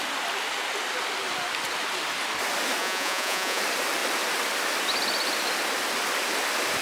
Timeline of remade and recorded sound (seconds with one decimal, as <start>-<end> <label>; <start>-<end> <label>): 0.0-2.8 recorded; 2.8-3.6 remade; 3.6-6.8 recorded